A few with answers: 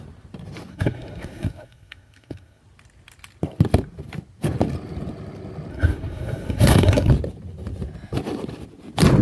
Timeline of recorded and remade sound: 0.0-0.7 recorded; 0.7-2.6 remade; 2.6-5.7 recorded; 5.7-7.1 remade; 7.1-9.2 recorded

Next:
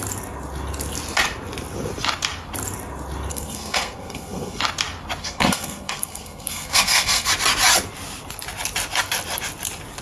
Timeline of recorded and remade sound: 0.0-3.3 recorded; 3.3-4.6 remade; 4.6-5.2 recorded; 5.2-7.3 remade; 7.3-10.0 recorded